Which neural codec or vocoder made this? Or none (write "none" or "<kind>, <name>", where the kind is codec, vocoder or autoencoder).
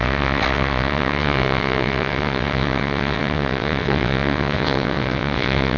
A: vocoder, WaveNeXt